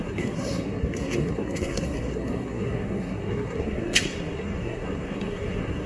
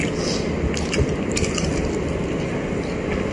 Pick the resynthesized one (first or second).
first